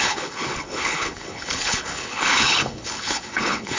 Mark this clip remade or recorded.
remade